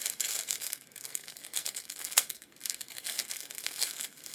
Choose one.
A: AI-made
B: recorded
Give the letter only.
A